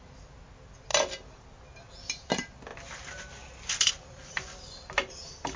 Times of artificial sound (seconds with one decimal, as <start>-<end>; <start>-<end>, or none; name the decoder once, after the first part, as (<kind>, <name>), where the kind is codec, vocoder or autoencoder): none